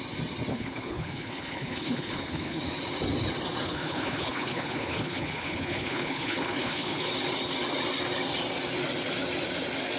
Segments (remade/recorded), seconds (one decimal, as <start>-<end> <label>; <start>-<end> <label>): 0.0-0.5 recorded; 0.5-2.6 remade; 2.6-3.6 recorded; 3.6-7.1 remade; 7.1-10.0 recorded

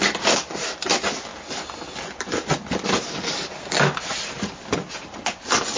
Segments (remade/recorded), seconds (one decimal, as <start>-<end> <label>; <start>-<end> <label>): 0.0-5.8 recorded

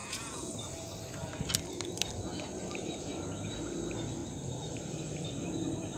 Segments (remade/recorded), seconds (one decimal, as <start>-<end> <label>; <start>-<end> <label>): 0.0-0.5 remade; 0.5-6.0 recorded

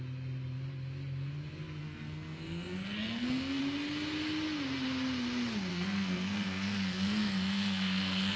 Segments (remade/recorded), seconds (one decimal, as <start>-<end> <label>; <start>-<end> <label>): 0.0-1.8 recorded; 1.8-3.6 remade; 3.6-5.7 recorded; 5.7-8.4 remade

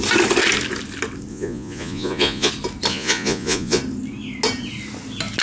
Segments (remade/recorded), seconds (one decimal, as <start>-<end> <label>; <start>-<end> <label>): 0.0-1.3 recorded; 1.3-2.5 remade; 2.5-2.9 recorded; 2.9-3.8 remade; 3.8-5.4 recorded

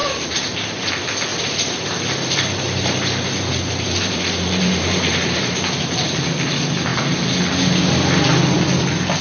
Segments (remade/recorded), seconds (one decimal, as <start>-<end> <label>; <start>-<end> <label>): 0.0-0.9 remade; 0.9-1.3 recorded; 1.3-5.8 remade; 5.8-9.2 recorded

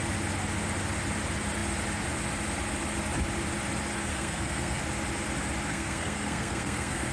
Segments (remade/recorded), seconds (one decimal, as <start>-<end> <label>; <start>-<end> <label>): 0.0-4.1 recorded; 4.1-4.8 remade; 4.8-5.7 recorded; 5.7-7.1 remade

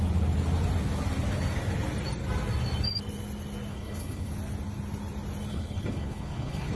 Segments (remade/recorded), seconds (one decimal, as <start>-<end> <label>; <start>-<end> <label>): 0.0-3.7 recorded; 3.7-4.3 remade; 4.3-5.5 recorded; 5.5-6.8 remade